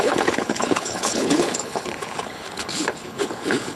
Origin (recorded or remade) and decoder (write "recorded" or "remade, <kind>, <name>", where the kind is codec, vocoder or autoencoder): remade, codec, HILCodec